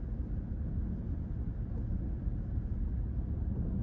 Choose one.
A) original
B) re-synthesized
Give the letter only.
A